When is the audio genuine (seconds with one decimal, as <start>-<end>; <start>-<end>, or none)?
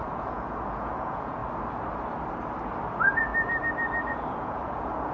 1.4-2.9; 3.3-4.1